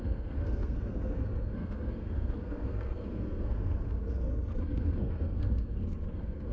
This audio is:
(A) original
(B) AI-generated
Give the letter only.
B